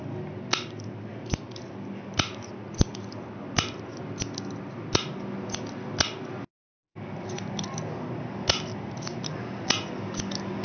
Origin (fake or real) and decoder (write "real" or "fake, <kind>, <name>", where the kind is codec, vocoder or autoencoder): real